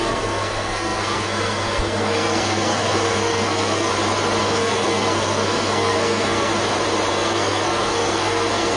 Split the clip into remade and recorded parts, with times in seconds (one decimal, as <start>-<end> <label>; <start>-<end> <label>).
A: 0.0-3.9 remade; 3.9-4.4 recorded; 4.4-6.5 remade; 6.5-7.1 recorded; 7.1-8.8 remade